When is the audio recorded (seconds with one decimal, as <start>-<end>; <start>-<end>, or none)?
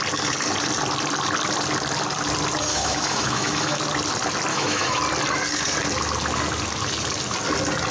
0.0-2.7; 3.8-4.5; 5.0-7.9